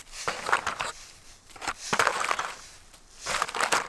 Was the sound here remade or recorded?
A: recorded